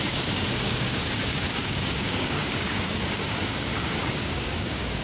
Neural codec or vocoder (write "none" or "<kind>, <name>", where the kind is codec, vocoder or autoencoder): codec, DAC